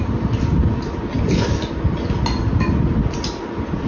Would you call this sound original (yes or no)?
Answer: yes